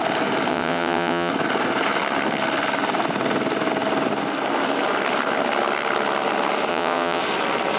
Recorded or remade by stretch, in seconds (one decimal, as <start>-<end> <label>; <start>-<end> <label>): 0.0-0.5 recorded; 0.5-1.3 remade; 1.3-6.7 recorded; 6.7-7.2 remade; 7.2-7.8 recorded